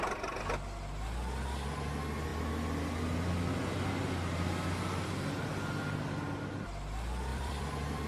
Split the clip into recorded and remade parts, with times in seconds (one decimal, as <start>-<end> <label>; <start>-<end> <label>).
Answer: 0.0-7.3 recorded; 7.3-8.1 remade